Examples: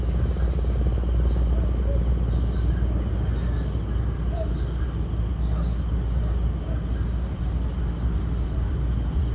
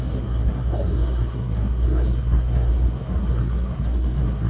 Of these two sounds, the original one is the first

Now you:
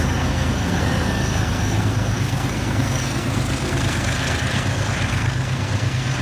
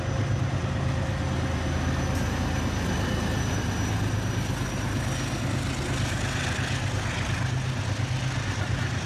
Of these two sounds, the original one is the second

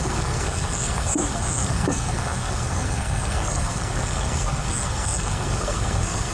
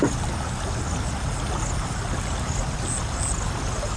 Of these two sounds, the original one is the second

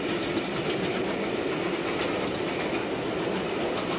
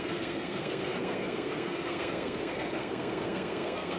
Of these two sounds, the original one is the first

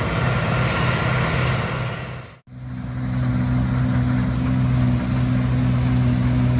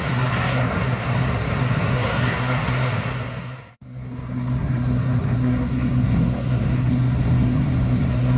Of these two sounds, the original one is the first